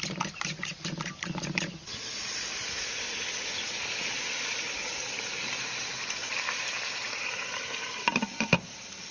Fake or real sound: real